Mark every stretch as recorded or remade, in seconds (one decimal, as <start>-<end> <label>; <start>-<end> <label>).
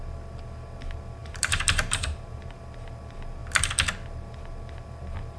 0.0-1.2 recorded; 1.2-2.6 remade; 2.6-5.4 recorded